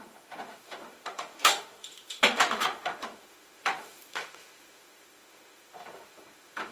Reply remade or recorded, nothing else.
remade